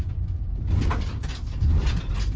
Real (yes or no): yes